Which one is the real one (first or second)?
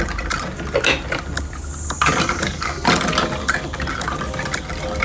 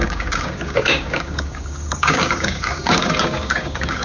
first